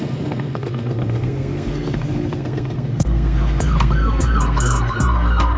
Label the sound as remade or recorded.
remade